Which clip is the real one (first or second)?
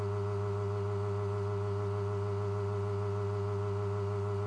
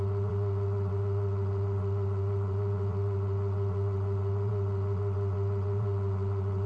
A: first